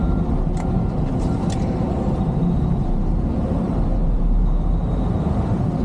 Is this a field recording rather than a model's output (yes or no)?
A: no